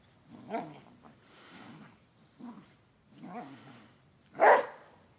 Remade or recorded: recorded